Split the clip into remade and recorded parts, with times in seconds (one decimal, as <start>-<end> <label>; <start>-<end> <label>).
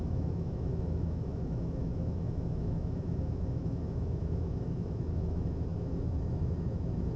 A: 0.0-7.2 remade